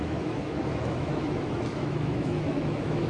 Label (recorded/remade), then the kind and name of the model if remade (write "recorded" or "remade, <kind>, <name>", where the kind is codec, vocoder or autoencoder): remade, autoencoder, DAC-VAE